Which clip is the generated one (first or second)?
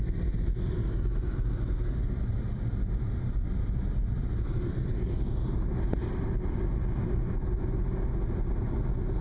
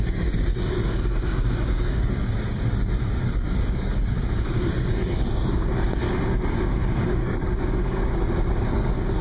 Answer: second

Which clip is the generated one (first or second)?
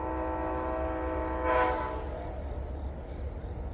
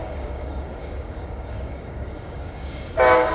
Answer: second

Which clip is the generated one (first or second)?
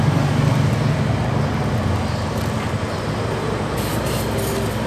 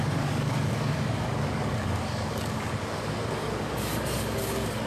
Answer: second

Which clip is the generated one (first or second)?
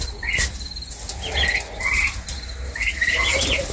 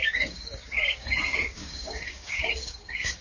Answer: second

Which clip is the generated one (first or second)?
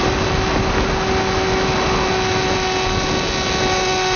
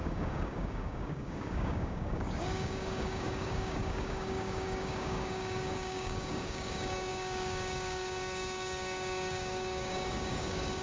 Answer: second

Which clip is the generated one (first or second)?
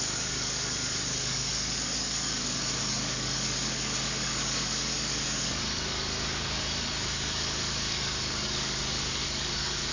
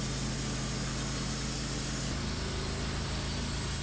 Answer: first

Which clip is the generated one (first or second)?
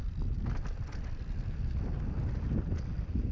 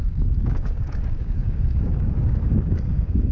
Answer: second